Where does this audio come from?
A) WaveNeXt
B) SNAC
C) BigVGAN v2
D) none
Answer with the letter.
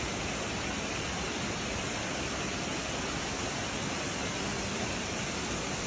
D